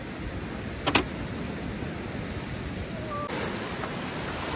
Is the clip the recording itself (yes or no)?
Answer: yes